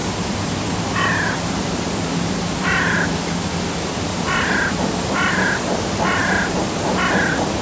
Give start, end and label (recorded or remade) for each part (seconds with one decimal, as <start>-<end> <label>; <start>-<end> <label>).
0.0-3.2 remade; 3.2-4.1 recorded; 4.1-7.0 remade; 7.0-7.6 recorded